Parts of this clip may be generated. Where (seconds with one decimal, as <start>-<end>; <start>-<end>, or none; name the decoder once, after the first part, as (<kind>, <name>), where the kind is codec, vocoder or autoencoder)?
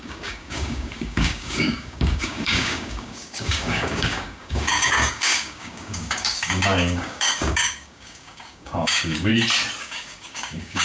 0.0-9.3 (codec, DAC); 9.8-10.8